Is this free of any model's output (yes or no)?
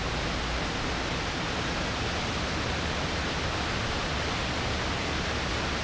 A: yes